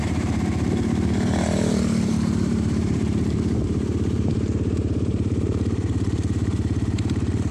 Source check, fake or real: fake